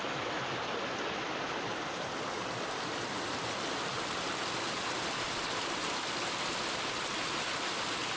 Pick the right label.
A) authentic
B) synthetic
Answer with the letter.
A